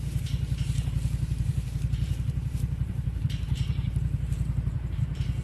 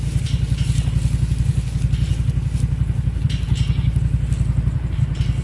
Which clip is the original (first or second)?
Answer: second